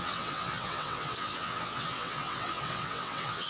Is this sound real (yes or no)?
no